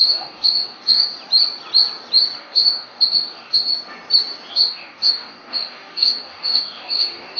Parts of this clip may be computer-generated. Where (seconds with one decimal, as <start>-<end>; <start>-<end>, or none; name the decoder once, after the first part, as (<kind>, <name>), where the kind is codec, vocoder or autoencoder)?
0.0-1.1 (codec, DAC); 2.4-3.7; 4.5-7.4